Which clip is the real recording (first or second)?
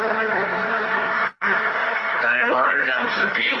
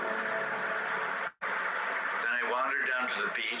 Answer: second